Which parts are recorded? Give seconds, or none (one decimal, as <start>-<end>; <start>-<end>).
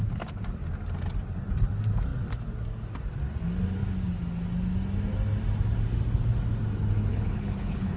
0.0-7.1